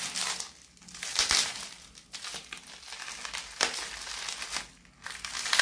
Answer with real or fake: real